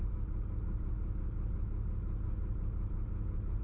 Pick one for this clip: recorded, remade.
recorded